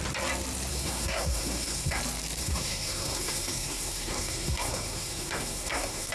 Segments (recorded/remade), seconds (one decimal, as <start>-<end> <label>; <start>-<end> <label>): 0.0-0.7 recorded; 0.7-2.0 remade; 2.0-2.4 recorded; 2.4-6.1 remade

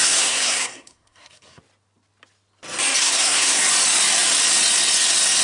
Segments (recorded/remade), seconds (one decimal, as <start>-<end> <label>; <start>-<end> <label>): 0.0-1.6 remade; 1.6-3.0 recorded; 3.0-3.6 remade; 3.6-5.4 recorded